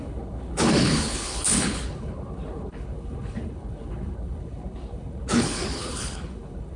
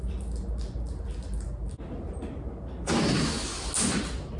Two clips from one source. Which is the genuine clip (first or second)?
second